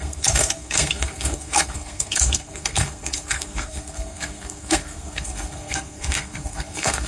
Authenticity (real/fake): fake